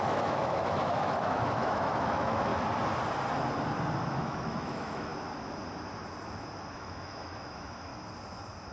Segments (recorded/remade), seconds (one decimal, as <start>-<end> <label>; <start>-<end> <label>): 0.0-2.5 remade; 2.5-4.1 recorded; 4.1-5.1 remade; 5.1-6.7 recorded; 6.7-7.9 remade; 7.9-8.7 recorded